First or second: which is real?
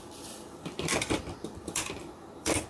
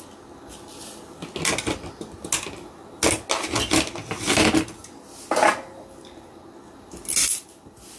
second